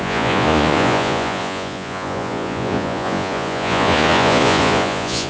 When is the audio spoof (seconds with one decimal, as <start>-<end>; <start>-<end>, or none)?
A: 0.0-5.3